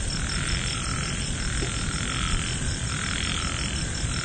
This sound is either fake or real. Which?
real